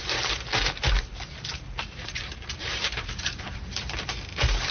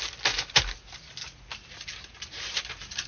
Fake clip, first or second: first